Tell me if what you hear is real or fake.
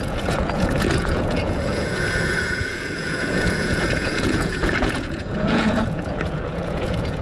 fake